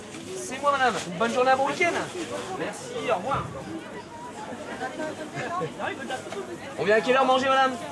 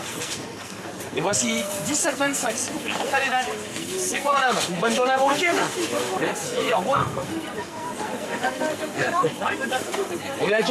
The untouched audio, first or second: first